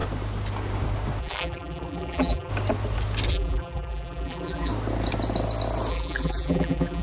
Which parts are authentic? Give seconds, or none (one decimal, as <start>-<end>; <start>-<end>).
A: 0.0-1.2; 2.5-3.3; 4.7-5.9

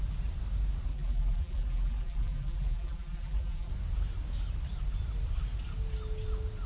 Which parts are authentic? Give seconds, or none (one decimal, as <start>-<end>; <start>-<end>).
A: 0.0-0.9; 3.7-6.7

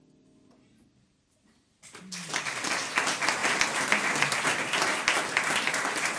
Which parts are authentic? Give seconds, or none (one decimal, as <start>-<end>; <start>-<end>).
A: 0.0-6.2

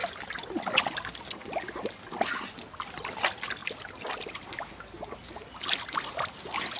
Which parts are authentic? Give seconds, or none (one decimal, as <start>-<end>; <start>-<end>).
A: 0.8-3.6; 4.6-5.2